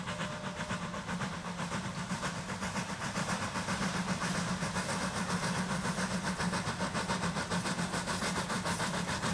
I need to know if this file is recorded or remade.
recorded